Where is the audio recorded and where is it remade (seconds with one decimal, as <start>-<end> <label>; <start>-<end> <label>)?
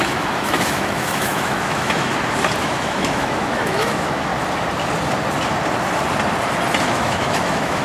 0.0-2.1 remade; 2.1-2.6 recorded; 2.6-4.3 remade; 4.3-6.8 recorded; 6.8-7.8 remade